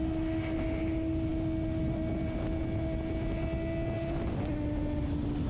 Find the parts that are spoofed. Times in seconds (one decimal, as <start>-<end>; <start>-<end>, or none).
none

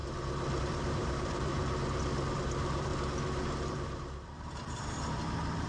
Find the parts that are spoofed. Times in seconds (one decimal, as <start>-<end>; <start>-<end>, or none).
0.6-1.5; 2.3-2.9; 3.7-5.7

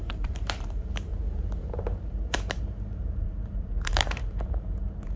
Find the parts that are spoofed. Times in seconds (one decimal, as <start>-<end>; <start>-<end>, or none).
0.0-1.1; 1.6-5.2

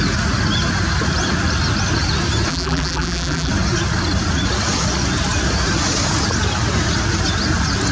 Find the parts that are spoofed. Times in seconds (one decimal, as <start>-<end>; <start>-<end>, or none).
2.5-3.5